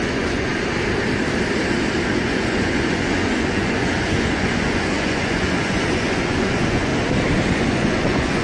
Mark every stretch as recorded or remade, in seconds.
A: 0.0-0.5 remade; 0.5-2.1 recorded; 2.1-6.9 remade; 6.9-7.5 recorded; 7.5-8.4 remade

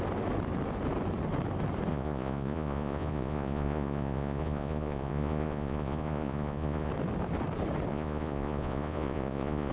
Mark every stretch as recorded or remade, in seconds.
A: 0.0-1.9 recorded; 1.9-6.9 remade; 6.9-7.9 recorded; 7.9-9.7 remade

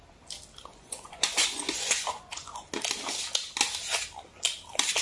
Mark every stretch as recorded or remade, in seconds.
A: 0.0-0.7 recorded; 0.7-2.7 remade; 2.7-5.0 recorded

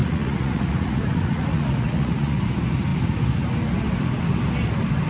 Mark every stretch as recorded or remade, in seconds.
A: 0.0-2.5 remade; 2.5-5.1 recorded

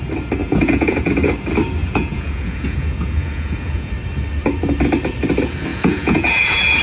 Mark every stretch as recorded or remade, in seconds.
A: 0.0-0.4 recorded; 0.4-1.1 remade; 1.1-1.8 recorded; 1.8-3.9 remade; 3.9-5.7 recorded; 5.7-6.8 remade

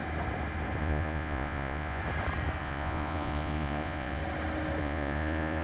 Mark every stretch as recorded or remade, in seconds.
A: 0.0-0.8 recorded; 0.8-2.0 remade; 2.0-2.6 recorded; 2.6-4.2 remade; 4.2-4.8 recorded; 4.8-5.6 remade